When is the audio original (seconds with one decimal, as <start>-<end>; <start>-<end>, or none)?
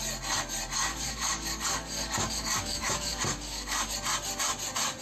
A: 0.0-0.9; 3.9-5.0